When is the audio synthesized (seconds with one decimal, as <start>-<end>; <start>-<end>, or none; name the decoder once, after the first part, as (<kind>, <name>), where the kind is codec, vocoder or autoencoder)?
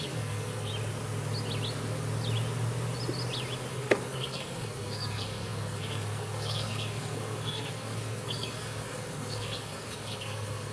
0.0-0.7 (codec, SNAC); 3.7-10.7